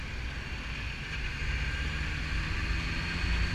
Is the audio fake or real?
real